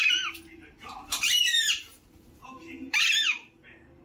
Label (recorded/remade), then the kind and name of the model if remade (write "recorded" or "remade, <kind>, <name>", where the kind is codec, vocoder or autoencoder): remade, vocoder, BigVGAN v2